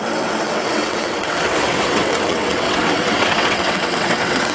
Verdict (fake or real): fake